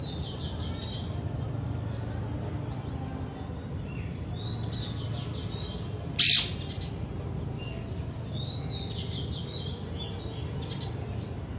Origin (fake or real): real